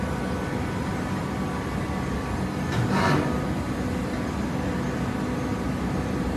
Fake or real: real